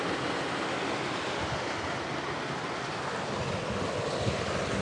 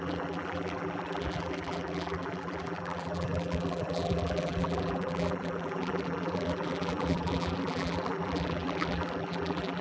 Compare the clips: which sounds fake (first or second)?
second